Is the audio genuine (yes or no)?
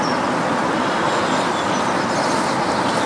yes